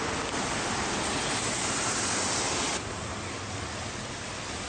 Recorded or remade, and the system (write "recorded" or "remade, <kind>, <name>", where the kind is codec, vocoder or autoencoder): recorded